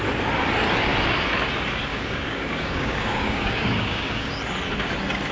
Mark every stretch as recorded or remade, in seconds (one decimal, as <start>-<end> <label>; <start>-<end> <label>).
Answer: 0.0-1.9 recorded; 1.9-4.3 remade; 4.3-5.3 recorded